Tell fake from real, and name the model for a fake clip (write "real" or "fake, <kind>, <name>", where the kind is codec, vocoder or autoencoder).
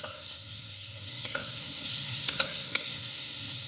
fake, codec, SNAC